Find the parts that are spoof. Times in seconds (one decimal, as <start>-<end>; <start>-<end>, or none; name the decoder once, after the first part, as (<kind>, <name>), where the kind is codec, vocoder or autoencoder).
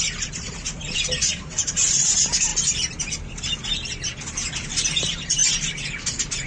0.0-2.5 (vocoder, BigVGAN v2); 5.0-5.4; 6.0-6.5